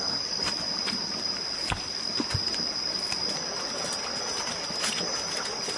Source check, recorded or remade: recorded